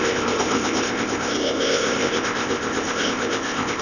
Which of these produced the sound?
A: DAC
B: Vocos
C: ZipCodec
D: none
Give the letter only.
C